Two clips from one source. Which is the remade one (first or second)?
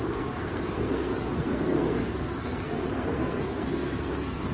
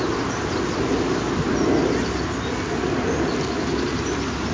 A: first